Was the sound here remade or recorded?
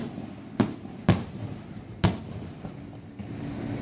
recorded